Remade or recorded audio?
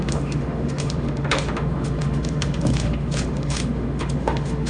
remade